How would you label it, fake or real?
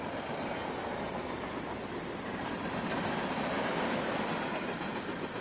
real